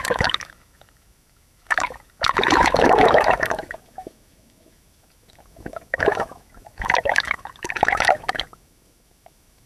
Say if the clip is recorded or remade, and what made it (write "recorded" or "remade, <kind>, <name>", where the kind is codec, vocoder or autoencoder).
remade, autoencoder, DAC-VAE